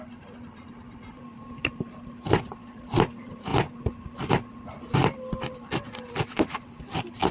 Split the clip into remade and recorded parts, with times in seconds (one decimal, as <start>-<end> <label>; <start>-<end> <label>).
0.0-7.3 recorded